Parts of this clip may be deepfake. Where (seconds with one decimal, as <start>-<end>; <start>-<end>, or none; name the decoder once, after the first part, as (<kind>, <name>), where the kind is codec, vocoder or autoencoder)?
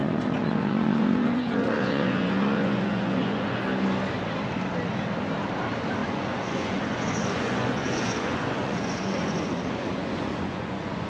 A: 0.0-3.6 (vocoder, Vocos); 6.0-11.1